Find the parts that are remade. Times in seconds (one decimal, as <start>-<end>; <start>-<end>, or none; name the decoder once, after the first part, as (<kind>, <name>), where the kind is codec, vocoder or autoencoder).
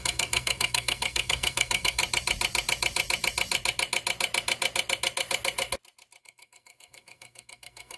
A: 0.0-2.0 (codec, SNAC); 6.2-8.0